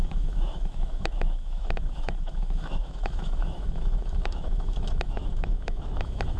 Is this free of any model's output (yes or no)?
no